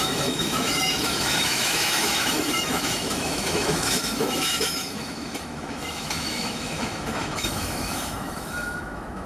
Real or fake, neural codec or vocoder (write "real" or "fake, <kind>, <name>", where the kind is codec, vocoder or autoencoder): fake, autoencoder, DAC-VAE